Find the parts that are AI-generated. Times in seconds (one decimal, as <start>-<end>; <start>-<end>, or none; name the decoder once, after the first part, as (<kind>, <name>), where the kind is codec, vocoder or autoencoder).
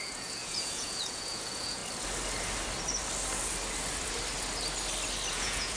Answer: 0.0-1.8 (vocoder, Vocos); 5.3-5.8